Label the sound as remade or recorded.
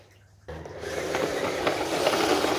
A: recorded